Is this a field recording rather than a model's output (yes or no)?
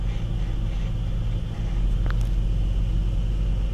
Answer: yes